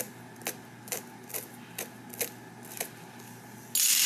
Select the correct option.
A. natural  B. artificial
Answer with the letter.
A